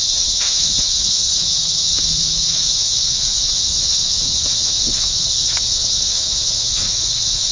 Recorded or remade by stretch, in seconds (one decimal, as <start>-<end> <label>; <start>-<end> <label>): 0.0-7.5 remade